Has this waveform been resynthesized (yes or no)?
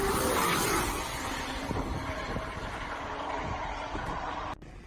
no